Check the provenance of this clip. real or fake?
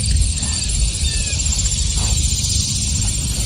real